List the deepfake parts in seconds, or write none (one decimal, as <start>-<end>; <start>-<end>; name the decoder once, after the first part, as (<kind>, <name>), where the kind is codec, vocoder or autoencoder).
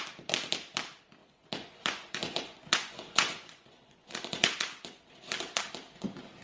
1.2-5.0 (vocoder, Vocos)